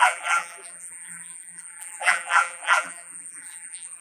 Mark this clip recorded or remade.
remade